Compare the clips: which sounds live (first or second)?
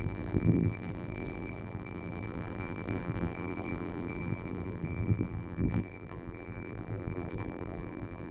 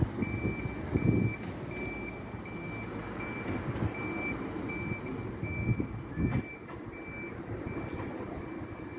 second